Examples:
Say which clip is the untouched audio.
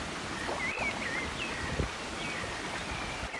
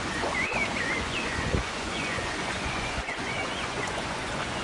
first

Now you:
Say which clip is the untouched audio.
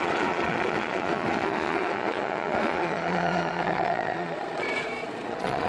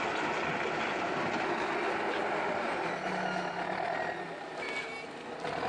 second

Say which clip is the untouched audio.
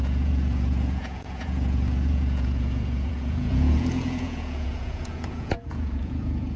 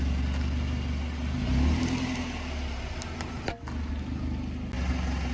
second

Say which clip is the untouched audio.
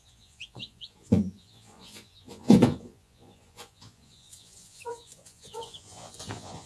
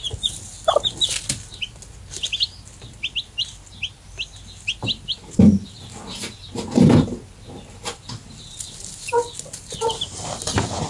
second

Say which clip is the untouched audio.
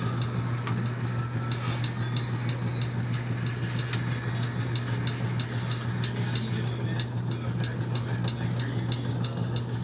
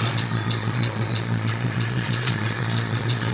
first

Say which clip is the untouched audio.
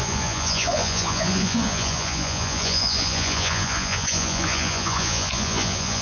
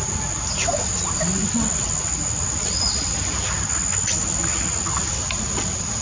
second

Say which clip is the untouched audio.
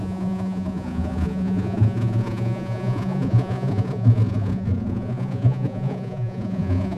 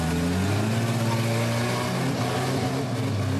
second